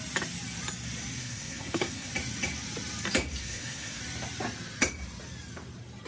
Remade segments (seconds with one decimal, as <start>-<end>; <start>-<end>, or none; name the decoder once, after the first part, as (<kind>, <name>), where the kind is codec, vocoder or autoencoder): 1.2-2.1 (codec, SNAC); 3.4-4.0